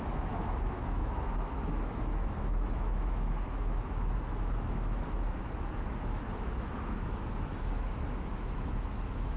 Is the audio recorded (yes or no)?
no